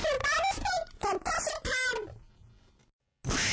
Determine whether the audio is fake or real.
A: real